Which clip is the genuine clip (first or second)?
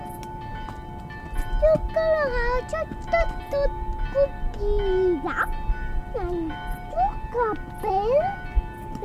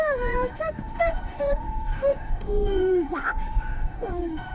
first